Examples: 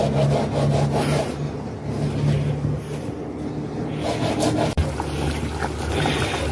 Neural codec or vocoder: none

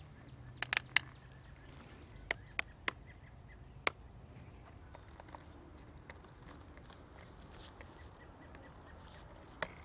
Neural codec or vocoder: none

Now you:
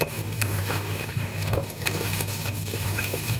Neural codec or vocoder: codec, DAC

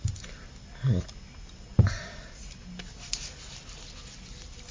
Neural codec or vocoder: none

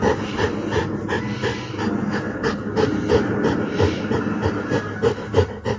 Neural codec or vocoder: none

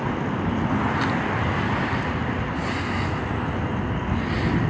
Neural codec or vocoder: none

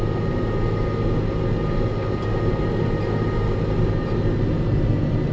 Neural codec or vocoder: none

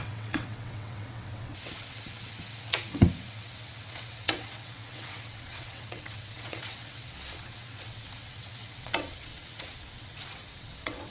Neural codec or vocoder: vocoder, WaveNeXt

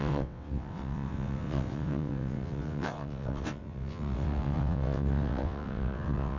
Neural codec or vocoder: vocoder, WaveNeXt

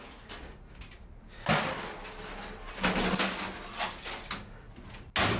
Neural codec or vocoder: none